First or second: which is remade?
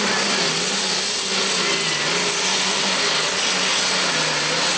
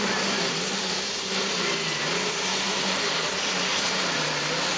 second